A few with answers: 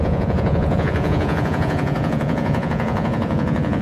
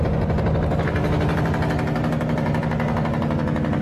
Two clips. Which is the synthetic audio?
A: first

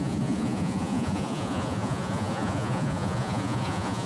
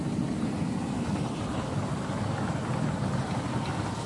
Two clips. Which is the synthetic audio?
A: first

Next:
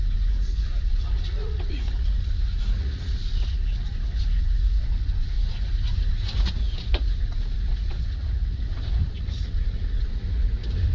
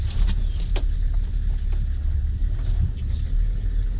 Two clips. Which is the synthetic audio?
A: first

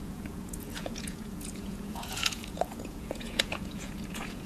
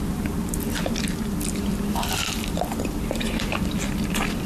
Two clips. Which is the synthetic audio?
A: first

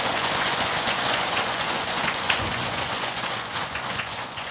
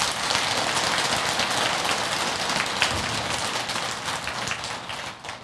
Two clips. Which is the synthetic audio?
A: first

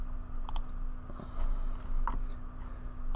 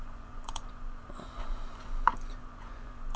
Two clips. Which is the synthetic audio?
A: second